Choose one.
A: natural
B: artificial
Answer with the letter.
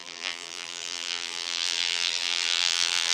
B